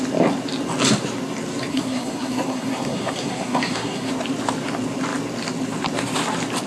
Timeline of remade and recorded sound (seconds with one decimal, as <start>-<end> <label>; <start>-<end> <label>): 0.0-1.7 recorded; 1.7-4.1 remade; 4.1-6.7 recorded